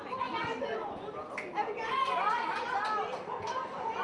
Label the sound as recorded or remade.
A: recorded